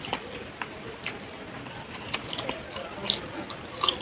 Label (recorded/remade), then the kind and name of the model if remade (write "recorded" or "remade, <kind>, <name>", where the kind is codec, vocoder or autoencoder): recorded